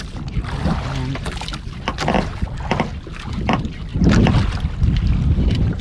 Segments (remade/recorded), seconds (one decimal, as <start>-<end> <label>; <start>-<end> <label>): 0.0-5.8 recorded